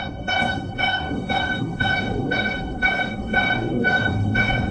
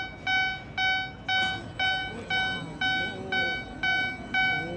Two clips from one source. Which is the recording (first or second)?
second